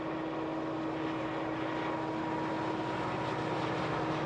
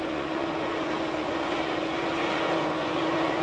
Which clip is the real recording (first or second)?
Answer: first